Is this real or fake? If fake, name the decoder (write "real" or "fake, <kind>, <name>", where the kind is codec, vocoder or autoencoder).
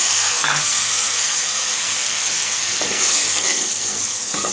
fake, codec, SNAC